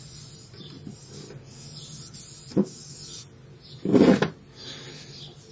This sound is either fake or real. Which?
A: real